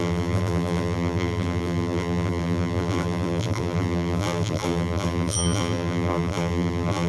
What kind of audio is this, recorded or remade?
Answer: remade